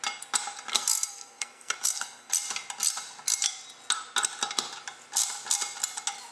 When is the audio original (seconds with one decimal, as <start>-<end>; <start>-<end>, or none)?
0.0-0.7; 2.3-6.3